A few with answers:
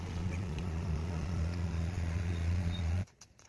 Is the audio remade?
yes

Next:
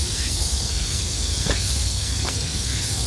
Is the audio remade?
yes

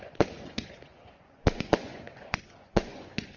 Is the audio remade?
yes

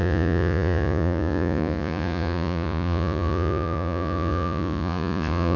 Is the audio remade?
yes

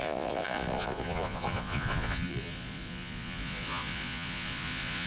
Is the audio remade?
yes